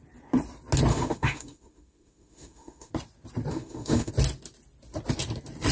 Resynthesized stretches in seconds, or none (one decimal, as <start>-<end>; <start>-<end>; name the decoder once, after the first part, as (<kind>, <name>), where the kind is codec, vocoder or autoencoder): 0.9-2.9 (autoencoder, DAC-VAE); 3.5-4.1